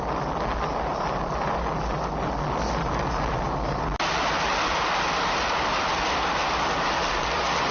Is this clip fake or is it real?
real